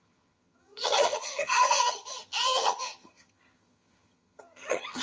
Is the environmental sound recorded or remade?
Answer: remade